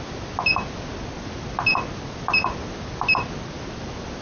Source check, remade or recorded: recorded